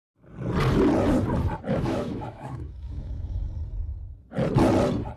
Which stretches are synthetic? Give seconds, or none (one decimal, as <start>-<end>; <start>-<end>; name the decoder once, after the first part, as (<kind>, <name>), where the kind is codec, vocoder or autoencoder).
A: 1.7-3.4 (autoencoder, DAC-VAE)